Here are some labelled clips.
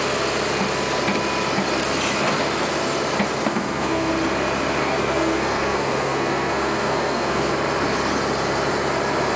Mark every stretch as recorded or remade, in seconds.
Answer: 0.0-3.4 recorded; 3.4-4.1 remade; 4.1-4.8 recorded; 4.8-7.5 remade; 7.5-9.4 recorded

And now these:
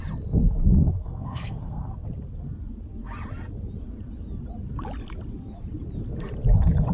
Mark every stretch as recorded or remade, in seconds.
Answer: 0.0-1.0 recorded; 1.0-1.8 remade; 1.8-6.9 recorded

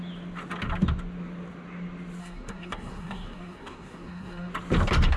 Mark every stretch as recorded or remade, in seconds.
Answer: 0.0-2.2 recorded; 2.2-4.5 remade; 4.5-5.2 recorded